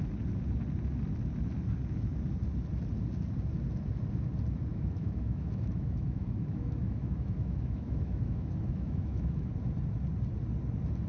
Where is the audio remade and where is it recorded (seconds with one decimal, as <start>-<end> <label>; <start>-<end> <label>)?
0.0-4.7 recorded; 4.7-9.5 remade; 9.5-11.1 recorded